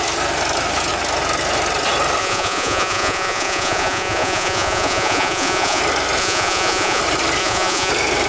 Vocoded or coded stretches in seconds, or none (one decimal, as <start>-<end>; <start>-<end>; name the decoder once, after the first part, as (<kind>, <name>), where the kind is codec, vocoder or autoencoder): 2.2-5.8 (vocoder, Vocos); 6.2-7.0; 7.4-7.9